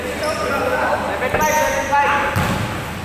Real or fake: real